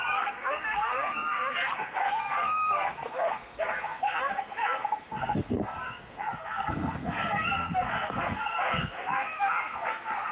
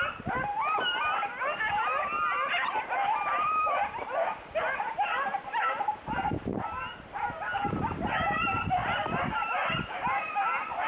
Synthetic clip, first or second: first